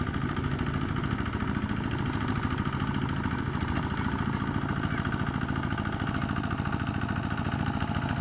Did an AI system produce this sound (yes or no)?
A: no